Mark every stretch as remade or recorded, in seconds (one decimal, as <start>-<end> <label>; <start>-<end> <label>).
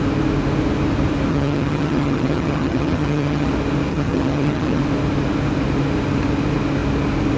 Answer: 0.0-1.3 recorded; 1.3-3.5 remade; 3.5-3.9 recorded; 3.9-4.8 remade; 4.8-7.4 recorded